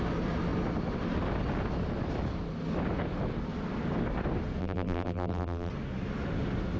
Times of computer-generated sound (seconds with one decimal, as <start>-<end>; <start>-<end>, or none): 4.6-5.7